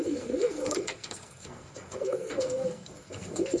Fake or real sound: fake